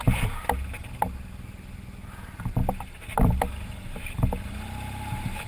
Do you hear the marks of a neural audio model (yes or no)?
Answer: no